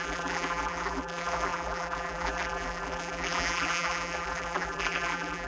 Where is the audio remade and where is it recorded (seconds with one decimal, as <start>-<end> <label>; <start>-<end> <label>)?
0.0-5.5 remade